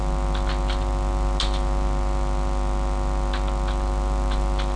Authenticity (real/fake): real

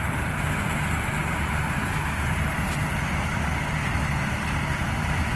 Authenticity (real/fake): real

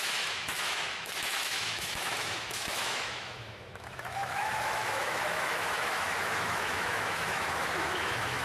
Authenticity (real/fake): fake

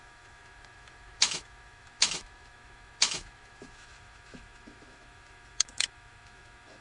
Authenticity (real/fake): fake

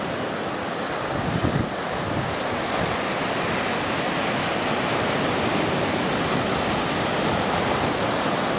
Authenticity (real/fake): real